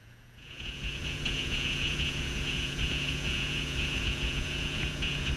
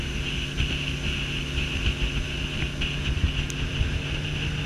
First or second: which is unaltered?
second